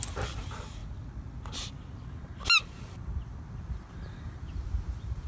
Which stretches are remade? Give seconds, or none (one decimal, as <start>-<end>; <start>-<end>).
none